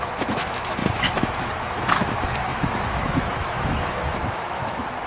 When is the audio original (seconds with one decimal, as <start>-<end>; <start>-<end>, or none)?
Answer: none